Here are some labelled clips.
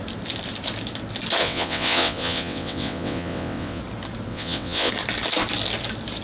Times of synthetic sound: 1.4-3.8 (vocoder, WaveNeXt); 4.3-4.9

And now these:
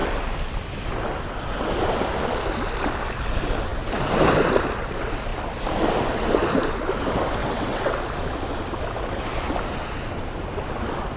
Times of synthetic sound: 7.4-8.0 (vocoder, WaveNeXt)